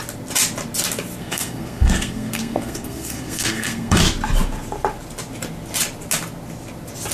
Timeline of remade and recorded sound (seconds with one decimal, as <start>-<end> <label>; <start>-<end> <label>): 0.0-1.2 recorded; 1.2-4.0 remade; 4.0-7.1 recorded